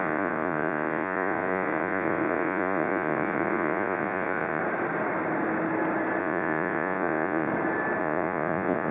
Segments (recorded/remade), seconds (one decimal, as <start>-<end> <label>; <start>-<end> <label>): 0.0-4.6 remade; 4.6-6.2 recorded; 6.2-7.5 remade; 7.5-8.0 recorded; 8.0-8.9 remade